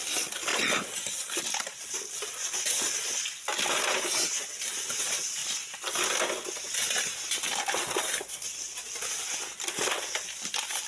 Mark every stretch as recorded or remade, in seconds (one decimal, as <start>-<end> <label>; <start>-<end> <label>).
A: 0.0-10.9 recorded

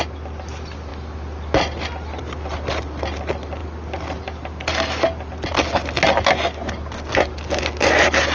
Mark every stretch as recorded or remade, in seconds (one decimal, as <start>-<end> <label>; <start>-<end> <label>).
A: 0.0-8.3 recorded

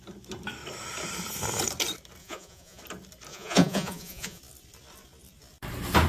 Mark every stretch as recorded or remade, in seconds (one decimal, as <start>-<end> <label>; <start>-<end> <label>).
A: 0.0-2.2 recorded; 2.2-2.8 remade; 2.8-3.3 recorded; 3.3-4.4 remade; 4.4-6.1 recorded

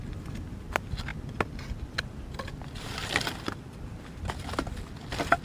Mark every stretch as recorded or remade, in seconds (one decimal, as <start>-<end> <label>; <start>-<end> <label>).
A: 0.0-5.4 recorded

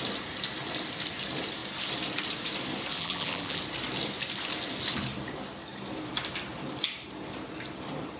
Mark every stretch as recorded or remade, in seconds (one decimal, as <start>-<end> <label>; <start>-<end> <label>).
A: 0.0-2.9 recorded; 2.9-3.6 remade; 3.6-8.2 recorded

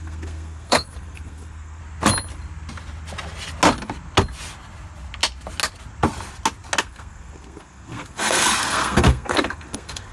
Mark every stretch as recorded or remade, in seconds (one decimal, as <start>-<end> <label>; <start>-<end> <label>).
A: 0.0-1.8 remade; 1.8-6.8 recorded; 6.8-10.1 remade